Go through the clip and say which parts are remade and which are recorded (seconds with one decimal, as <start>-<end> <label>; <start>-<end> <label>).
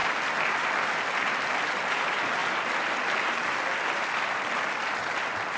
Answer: 0.0-1.9 remade; 1.9-2.4 recorded; 2.4-4.9 remade; 4.9-5.6 recorded